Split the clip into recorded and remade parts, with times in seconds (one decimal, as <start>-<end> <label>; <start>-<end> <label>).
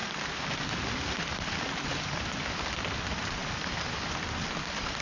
0.0-5.0 recorded